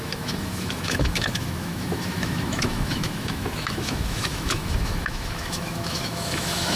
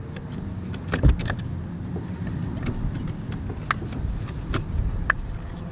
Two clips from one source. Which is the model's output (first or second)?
first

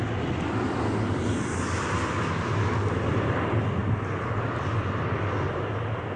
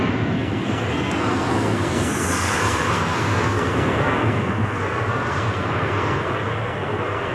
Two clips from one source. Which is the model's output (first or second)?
second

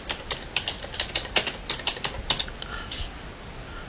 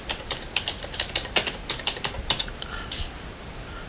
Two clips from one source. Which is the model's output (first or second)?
second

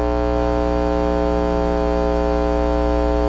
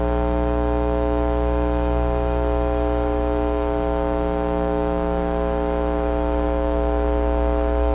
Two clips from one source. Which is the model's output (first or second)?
second